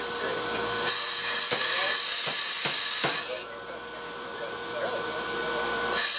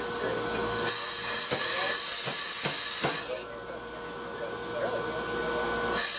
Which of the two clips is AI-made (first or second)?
first